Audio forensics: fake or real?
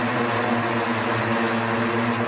real